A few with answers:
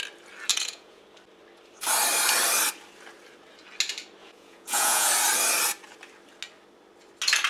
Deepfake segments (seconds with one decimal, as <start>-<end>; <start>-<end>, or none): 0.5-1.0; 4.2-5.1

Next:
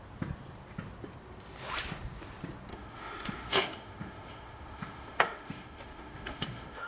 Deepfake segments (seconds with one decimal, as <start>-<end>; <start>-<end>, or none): 2.7-6.9

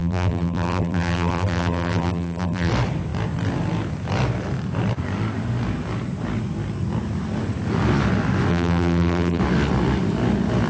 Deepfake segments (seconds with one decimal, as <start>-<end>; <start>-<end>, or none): 0.0-2.7; 8.5-9.4